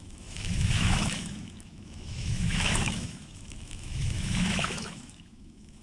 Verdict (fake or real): fake